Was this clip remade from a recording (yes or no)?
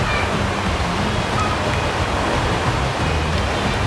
no